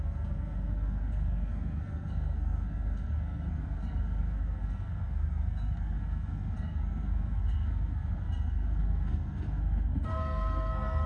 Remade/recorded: remade